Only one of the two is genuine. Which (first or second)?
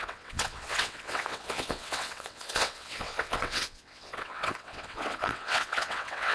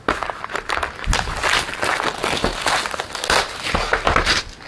second